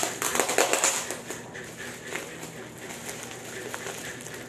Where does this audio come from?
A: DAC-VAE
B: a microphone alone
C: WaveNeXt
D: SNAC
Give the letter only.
B